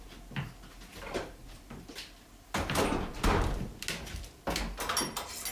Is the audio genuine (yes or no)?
yes